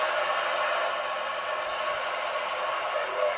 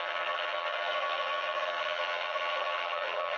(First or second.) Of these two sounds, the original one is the first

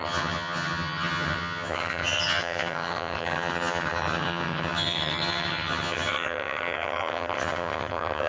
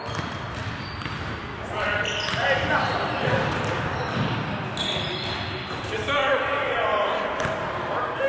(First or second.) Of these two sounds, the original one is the second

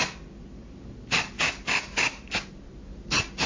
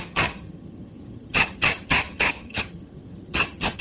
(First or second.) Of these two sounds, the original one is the first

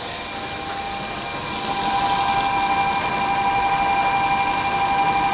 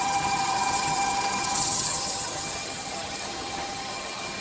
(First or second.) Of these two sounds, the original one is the first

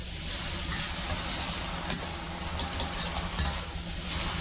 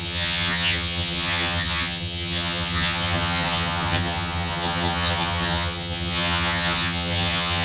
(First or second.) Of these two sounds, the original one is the first